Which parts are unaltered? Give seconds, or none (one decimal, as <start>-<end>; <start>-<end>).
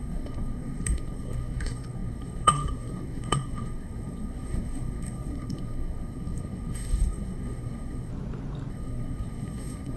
8.1-8.7